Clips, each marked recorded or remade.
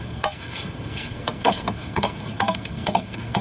remade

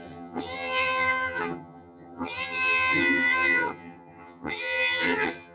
remade